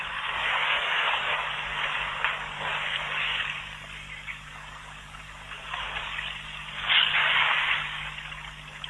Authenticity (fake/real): fake